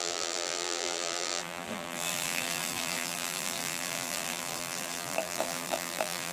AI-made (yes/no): yes